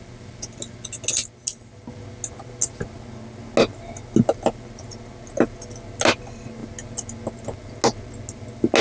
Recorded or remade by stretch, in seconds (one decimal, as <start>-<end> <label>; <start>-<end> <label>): 0.0-8.8 recorded